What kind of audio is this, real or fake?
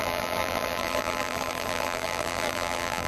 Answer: fake